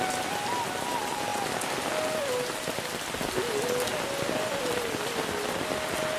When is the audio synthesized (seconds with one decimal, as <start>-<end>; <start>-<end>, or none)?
none